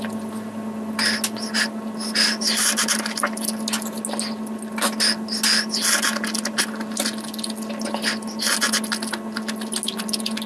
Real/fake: real